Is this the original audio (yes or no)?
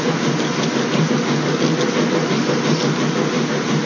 yes